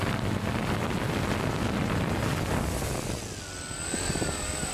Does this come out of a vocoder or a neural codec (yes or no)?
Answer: no